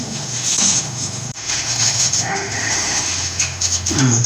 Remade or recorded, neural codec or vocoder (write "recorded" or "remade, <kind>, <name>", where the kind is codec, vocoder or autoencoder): remade, autoencoder, DAC-VAE